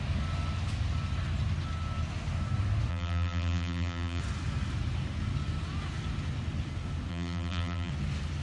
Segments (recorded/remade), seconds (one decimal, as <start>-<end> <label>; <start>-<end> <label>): 0.0-2.9 recorded; 2.9-4.2 remade; 4.2-7.1 recorded; 7.1-7.9 remade; 7.9-8.4 recorded